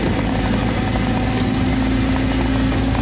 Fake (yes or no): no